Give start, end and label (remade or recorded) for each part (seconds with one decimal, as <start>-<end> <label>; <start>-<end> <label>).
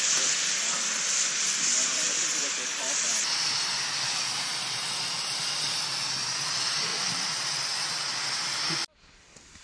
0.0-9.6 recorded